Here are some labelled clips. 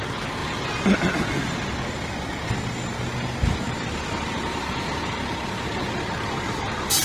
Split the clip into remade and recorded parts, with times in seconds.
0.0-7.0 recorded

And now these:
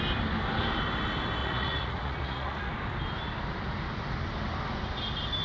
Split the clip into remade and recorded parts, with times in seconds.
0.0-1.4 recorded; 1.4-2.7 remade; 2.7-5.4 recorded

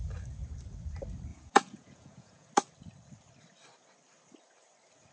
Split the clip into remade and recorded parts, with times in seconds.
0.0-1.3 recorded; 1.3-2.5 remade; 2.5-5.1 recorded